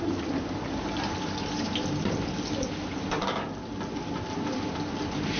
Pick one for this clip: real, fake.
real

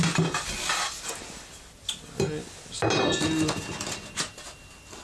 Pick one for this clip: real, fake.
real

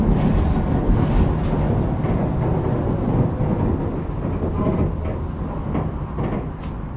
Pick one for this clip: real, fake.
real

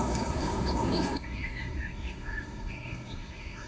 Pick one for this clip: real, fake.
fake